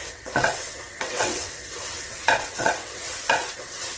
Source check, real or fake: fake